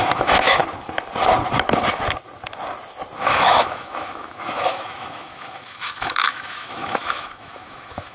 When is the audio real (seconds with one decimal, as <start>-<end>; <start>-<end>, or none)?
0.6-3.2